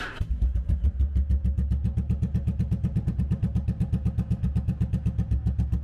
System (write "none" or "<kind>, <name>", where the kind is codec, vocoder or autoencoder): none